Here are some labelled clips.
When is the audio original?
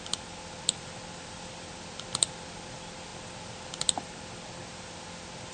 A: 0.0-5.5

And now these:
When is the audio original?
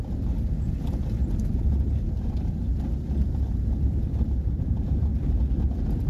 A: 0.0-1.5; 2.7-3.8; 5.1-6.1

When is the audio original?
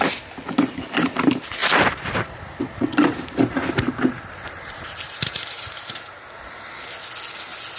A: 0.0-1.6; 6.1-7.8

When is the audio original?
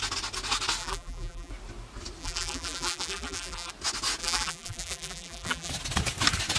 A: 0.0-0.8; 1.5-2.2; 3.7-4.2; 5.7-6.6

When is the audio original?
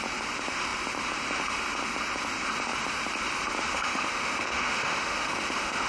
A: 0.0-3.7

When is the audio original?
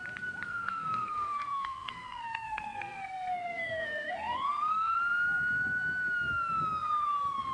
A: 0.0-0.5; 5.0-7.5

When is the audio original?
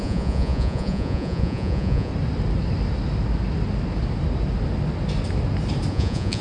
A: 2.1-5.9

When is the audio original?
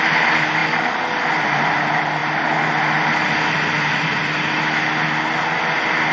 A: 0.0-6.1